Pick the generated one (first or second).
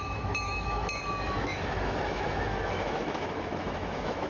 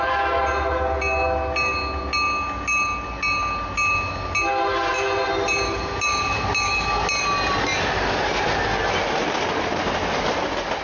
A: first